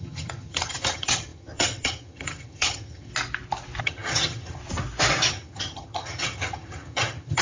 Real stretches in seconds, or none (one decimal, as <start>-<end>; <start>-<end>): 3.1-3.8; 4.6-5.3